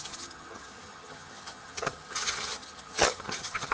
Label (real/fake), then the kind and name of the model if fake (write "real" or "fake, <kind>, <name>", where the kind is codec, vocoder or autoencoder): fake, vocoder, HiFi-GAN